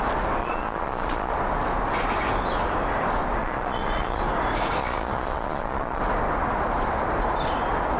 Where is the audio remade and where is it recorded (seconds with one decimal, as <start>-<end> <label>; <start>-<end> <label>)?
0.0-0.4 recorded; 0.4-1.3 remade; 1.3-3.4 recorded; 3.4-4.2 remade; 4.2-4.8 recorded; 4.8-6.0 remade; 6.0-8.0 recorded